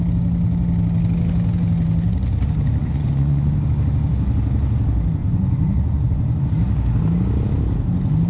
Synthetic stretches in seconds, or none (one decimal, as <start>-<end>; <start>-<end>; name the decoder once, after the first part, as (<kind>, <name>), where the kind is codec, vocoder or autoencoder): 2.8-3.5 (vocoder, Vocos); 5.2-6.5